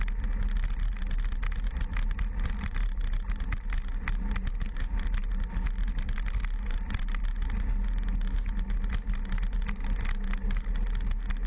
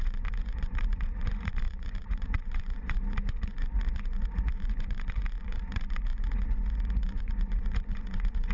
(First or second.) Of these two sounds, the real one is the first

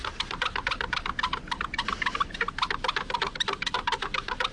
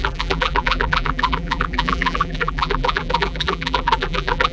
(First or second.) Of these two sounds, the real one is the first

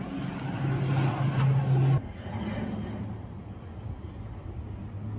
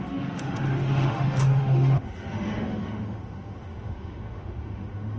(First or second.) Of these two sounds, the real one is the first